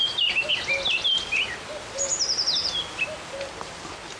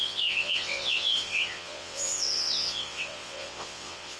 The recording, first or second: first